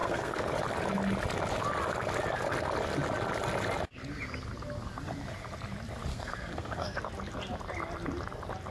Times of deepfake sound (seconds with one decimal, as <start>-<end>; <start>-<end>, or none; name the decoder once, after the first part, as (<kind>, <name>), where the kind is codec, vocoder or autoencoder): 0.0-0.5 (codec, SNAC); 6.1-7.0